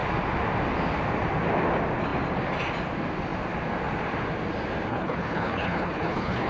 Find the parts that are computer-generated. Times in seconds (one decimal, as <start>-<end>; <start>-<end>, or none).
4.9-6.5

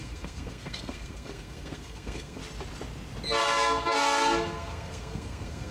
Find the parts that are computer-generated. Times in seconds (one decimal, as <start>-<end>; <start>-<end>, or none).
0.0-2.4; 3.4-5.7

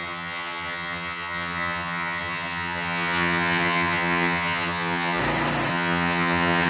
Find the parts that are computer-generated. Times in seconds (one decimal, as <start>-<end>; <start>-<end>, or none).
0.0-5.2; 5.7-6.7

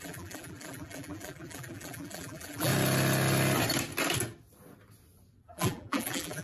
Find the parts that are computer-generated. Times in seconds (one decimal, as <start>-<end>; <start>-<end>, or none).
0.0-2.7; 5.4-6.4

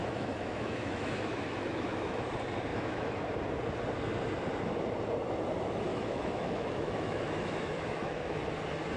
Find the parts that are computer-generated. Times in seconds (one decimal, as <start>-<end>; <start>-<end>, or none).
0.0-2.2; 2.7-3.2; 5.9-8.4

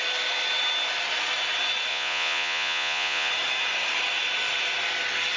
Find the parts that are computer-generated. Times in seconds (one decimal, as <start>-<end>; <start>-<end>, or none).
1.9-3.3

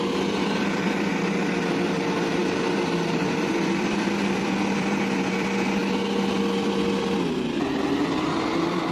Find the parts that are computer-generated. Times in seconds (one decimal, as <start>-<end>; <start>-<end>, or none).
0.0-1.1; 1.7-5.8